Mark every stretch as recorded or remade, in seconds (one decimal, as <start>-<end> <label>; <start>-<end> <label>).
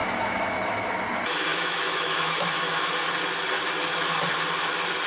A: 0.0-1.0 remade; 1.0-1.5 recorded; 1.5-2.9 remade; 2.9-5.1 recorded